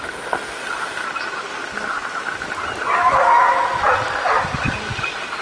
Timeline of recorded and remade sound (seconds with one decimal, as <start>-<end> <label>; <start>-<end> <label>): 0.0-5.4 recorded